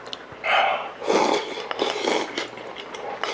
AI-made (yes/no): no